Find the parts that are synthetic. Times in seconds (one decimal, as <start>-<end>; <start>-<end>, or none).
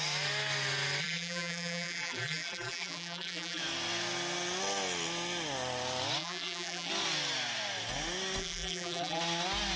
1.0-3.6; 6.2-6.9; 8.4-9.2